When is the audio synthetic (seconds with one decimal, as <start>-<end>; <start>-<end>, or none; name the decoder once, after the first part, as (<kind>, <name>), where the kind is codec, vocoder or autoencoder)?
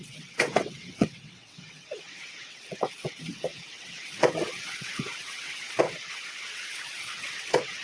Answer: 0.0-7.8 (vocoder, WaveNeXt)